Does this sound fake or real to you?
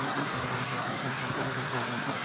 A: fake